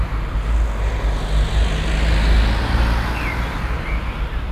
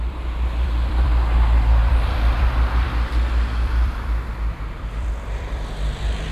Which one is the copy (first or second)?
second